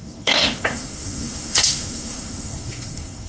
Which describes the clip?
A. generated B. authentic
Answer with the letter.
A